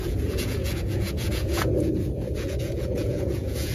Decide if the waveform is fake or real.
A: fake